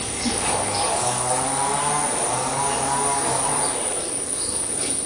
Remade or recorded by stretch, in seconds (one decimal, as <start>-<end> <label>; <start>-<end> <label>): 0.0-1.5 remade; 1.5-2.3 recorded; 2.3-3.5 remade; 3.5-4.0 recorded; 4.0-5.1 remade